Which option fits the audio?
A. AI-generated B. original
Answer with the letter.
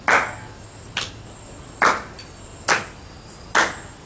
B